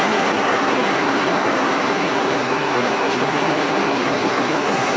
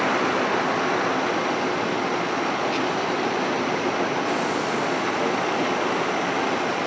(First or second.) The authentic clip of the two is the second